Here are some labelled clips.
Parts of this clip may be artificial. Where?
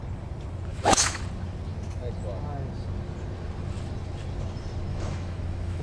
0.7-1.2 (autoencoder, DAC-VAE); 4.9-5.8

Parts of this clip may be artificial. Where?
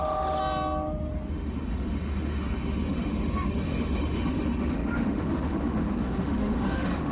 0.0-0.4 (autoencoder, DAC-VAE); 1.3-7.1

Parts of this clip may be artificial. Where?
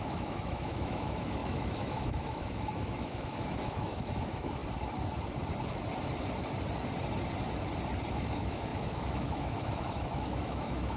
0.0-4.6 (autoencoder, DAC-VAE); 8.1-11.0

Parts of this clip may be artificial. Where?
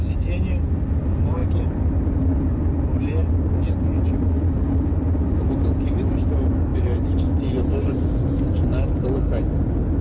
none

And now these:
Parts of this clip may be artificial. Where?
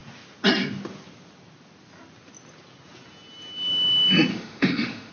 4.3-5.1 (autoencoder, DAC-VAE)